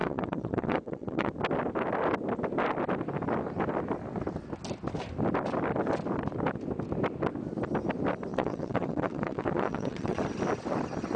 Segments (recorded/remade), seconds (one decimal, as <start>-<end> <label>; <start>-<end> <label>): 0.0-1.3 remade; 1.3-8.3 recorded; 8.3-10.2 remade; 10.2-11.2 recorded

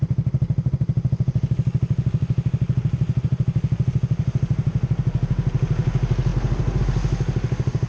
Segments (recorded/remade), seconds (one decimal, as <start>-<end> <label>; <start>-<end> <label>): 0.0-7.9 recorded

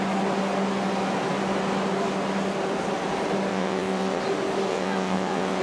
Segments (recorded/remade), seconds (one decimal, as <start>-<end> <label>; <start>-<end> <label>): 0.0-3.5 recorded; 3.5-4.2 remade; 4.2-4.7 recorded; 4.7-5.6 remade

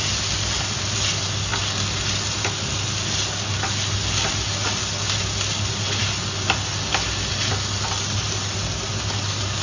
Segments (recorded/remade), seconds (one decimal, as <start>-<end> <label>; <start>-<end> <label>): 0.0-9.6 recorded

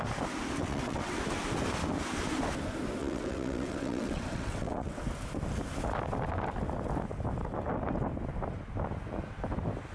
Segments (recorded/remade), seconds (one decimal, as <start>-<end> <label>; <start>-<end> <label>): 0.0-0.6 recorded; 0.6-1.2 remade; 1.2-3.0 recorded; 3.0-5.0 remade; 5.0-9.9 recorded

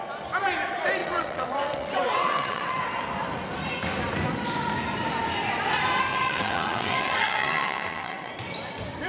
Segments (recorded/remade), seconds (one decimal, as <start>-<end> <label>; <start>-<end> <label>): 0.0-1.0 recorded; 1.0-2.8 remade; 2.8-6.1 recorded; 6.1-8.3 remade; 8.3-9.1 recorded

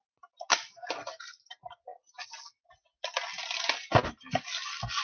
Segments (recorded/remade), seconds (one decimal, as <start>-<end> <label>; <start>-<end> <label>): 0.0-5.0 recorded